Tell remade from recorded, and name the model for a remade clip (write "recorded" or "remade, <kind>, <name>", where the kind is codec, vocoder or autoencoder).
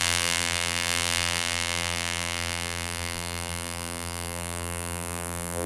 remade, vocoder, BigVGAN v2